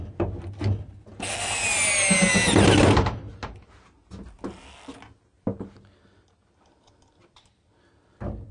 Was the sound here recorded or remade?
recorded